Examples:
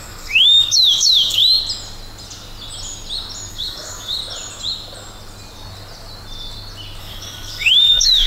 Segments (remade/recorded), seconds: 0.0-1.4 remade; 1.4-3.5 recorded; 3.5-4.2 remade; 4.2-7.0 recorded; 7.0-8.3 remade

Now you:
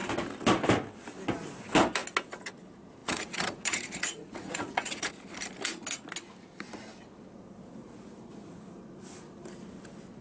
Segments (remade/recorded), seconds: 0.0-3.0 recorded; 3.0-5.1 remade; 5.1-7.8 recorded; 7.8-8.6 remade; 8.6-10.2 recorded

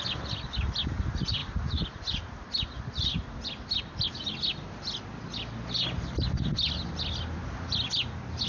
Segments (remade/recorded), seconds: 0.0-8.5 recorded

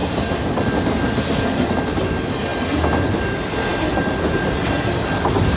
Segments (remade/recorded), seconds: 0.0-5.6 recorded

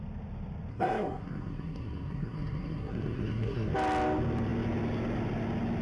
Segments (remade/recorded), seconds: 0.0-0.7 recorded; 0.7-3.7 remade; 3.7-5.8 recorded

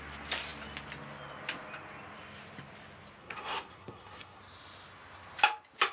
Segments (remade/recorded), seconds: 0.0-3.2 recorded; 3.2-4.4 remade; 4.4-5.9 recorded

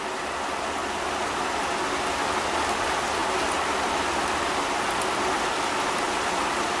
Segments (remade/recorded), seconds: 0.0-6.8 recorded